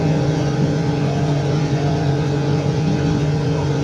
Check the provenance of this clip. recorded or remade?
remade